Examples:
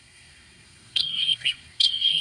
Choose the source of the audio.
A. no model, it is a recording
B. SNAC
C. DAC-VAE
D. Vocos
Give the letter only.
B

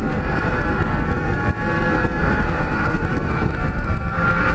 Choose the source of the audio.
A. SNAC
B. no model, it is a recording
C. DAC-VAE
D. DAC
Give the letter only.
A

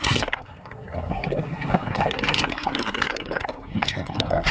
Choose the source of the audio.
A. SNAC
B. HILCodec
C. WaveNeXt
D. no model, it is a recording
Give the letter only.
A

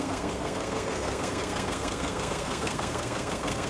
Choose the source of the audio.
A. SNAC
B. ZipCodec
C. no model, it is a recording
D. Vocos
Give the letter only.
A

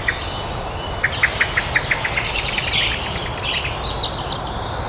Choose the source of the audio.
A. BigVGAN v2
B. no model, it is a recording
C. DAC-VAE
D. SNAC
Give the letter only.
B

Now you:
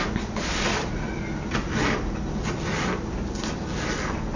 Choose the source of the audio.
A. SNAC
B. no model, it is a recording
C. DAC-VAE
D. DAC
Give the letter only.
B